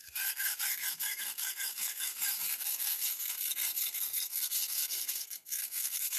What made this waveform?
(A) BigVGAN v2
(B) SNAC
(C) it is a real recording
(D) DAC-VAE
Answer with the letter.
B